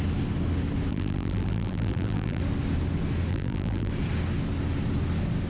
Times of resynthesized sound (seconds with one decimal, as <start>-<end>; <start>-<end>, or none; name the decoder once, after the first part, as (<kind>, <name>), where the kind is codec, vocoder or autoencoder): 0.9-2.4 (vocoder, BigVGAN v2); 3.3-3.9